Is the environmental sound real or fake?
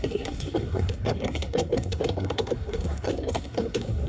fake